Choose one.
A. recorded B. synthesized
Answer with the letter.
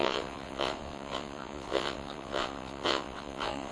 B